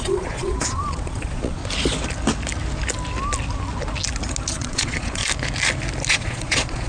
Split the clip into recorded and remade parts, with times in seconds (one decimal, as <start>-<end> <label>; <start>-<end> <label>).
0.0-1.6 remade; 1.6-4.5 recorded; 4.5-5.2 remade; 5.2-6.1 recorded; 6.1-6.9 remade